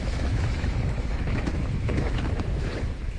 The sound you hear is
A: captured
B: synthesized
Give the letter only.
B